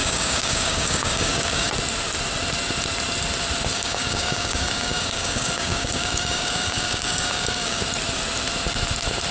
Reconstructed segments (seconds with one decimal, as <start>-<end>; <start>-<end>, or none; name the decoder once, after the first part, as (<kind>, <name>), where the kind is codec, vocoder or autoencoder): 0.0-1.7 (codec, DAC); 3.7-7.8